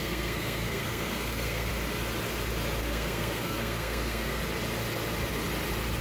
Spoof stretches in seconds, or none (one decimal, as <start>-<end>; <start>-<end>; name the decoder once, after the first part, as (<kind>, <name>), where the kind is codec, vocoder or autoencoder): 0.0-1.7 (codec, SNAC); 2.8-4.4